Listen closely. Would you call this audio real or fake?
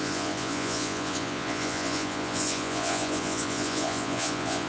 fake